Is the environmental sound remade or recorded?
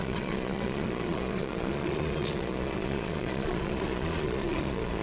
remade